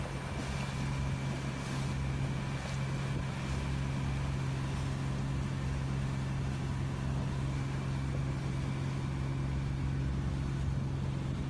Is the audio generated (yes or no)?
no